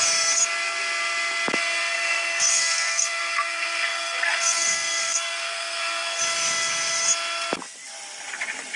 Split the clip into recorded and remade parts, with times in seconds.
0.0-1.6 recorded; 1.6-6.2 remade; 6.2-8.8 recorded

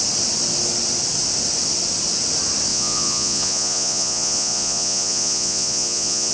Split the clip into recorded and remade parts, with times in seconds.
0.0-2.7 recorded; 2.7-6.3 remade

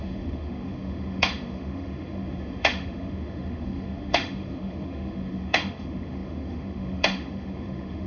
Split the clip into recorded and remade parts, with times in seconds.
0.0-8.1 remade

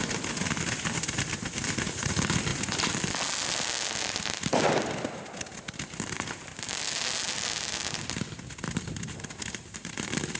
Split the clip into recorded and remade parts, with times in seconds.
0.0-10.4 recorded

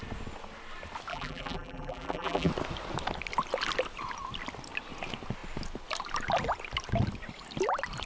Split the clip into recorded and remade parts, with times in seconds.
0.0-1.1 recorded; 1.1-2.5 remade; 2.5-8.1 recorded

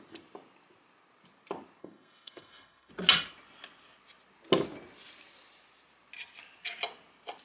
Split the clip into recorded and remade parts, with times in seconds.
0.0-1.8 recorded; 1.8-2.9 remade; 2.9-7.4 recorded

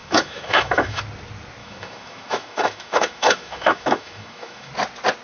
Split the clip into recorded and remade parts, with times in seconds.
0.0-1.0 remade; 1.0-1.6 recorded; 1.6-4.7 remade; 4.7-5.2 recorded